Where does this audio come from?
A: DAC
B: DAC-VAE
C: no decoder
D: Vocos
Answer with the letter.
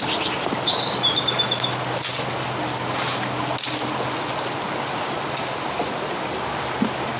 C